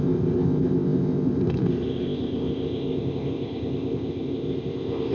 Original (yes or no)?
no